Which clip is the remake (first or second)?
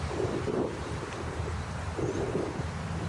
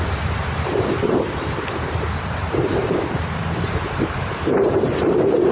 second